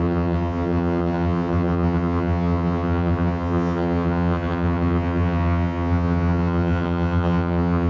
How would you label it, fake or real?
fake